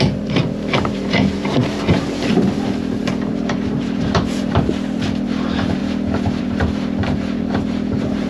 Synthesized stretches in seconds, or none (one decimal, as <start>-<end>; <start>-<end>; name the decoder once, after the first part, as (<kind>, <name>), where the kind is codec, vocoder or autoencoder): 0.0-5.8 (vocoder, BigVGAN v2); 6.4-8.3